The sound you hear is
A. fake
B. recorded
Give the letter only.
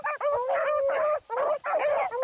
B